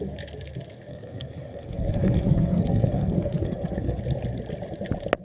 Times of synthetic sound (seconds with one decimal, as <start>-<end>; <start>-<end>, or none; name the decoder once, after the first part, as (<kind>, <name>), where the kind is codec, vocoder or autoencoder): 0.9-4.0 (codec, SNAC)